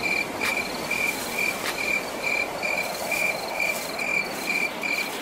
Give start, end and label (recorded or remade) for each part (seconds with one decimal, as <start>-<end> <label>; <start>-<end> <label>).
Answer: 0.0-2.5 recorded; 2.5-3.6 remade; 3.6-4.1 recorded; 4.1-4.7 remade; 4.7-5.2 recorded